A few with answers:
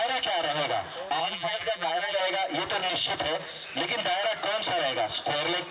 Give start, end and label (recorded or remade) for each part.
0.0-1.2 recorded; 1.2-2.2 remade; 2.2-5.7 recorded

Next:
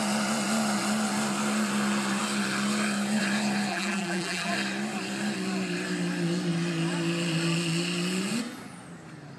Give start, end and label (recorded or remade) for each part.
0.0-3.7 recorded; 3.7-4.5 remade; 4.5-9.4 recorded

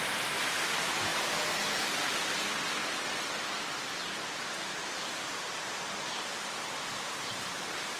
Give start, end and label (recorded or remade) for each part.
0.0-1.1 remade; 1.1-4.2 recorded; 4.2-8.0 remade